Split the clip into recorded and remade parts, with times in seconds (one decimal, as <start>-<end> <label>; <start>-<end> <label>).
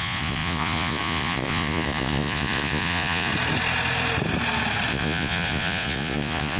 0.0-3.3 remade; 3.3-4.9 recorded; 4.9-6.6 remade